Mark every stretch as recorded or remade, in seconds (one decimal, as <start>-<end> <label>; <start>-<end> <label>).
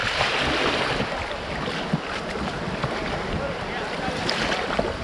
0.0-5.0 recorded